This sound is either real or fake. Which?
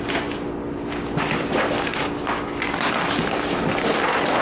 real